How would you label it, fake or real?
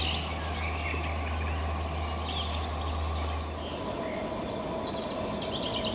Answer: real